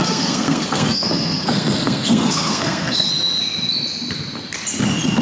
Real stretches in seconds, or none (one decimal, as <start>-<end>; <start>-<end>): 3.1-5.2